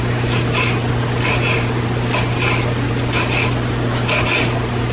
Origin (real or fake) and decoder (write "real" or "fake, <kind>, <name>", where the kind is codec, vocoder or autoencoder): real